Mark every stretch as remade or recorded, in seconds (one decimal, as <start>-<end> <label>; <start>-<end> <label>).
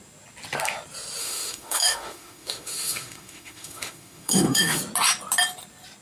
0.0-1.2 recorded; 1.2-4.8 remade; 4.8-6.0 recorded